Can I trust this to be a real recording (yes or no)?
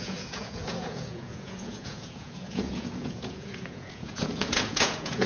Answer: no